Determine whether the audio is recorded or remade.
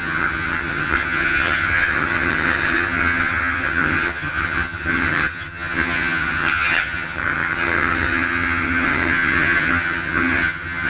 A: remade